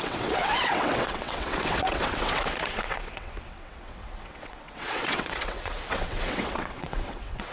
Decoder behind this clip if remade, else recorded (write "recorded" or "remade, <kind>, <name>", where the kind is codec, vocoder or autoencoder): remade, vocoder, WaveNeXt